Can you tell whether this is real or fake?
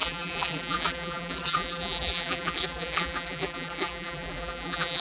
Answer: fake